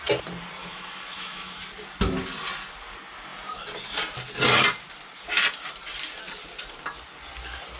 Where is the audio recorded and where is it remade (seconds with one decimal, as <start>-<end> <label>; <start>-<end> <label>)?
0.0-0.6 recorded; 0.6-1.6 remade; 1.6-7.8 recorded